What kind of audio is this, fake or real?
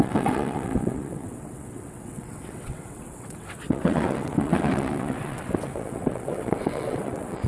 fake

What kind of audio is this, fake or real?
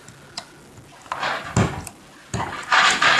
real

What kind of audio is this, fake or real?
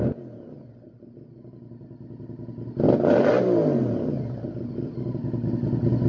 real